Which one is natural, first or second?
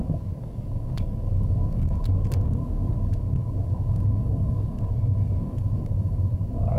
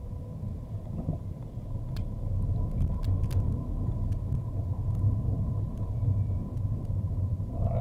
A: second